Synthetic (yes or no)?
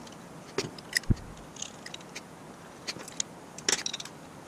no